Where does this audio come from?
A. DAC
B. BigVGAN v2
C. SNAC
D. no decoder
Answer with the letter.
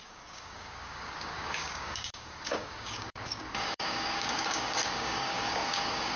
A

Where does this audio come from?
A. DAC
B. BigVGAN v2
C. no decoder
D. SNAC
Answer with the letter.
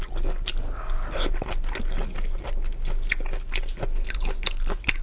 C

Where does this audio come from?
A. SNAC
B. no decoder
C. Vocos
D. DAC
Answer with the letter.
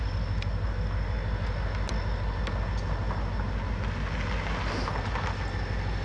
B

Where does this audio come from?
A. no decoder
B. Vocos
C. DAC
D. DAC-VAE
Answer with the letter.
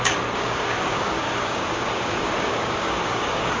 C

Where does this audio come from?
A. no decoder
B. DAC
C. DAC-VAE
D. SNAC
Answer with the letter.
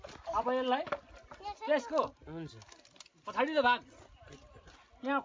A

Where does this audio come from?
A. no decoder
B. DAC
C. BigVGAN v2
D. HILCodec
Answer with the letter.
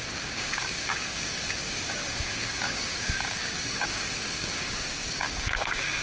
B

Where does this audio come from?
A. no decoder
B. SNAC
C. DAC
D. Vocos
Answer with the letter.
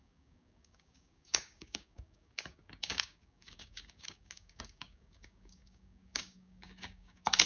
C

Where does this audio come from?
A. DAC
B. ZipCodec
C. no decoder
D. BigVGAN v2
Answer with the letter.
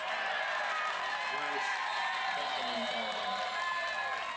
C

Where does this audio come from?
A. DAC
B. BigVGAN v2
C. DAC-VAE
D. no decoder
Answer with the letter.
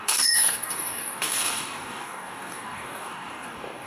A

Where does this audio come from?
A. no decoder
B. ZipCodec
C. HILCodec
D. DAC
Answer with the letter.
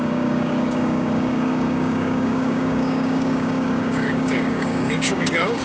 D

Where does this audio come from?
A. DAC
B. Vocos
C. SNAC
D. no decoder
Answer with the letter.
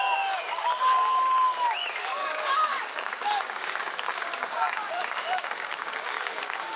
A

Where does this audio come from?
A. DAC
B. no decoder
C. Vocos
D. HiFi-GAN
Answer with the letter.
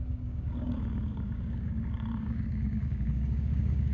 A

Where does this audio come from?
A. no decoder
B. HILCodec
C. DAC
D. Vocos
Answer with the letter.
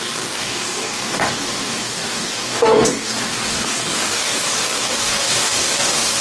C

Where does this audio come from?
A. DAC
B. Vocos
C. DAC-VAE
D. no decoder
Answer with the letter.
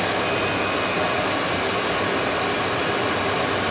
D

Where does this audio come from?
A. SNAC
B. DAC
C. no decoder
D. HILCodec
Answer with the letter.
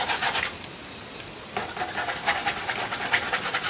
C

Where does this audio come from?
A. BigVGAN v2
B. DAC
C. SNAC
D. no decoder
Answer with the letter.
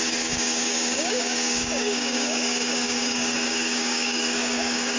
B